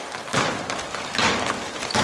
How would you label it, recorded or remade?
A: recorded